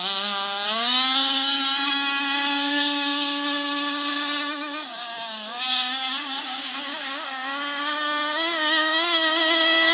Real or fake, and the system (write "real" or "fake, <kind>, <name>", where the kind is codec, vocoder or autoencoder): fake, codec, DAC